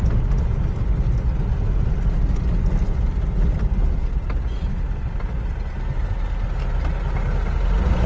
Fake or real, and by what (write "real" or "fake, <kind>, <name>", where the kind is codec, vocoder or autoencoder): real